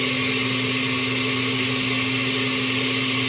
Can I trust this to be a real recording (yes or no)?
yes